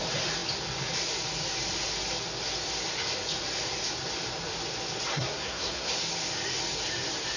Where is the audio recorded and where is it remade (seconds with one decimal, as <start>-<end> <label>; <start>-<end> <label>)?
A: 0.0-5.1 recorded; 5.1-6.0 remade; 6.0-7.4 recorded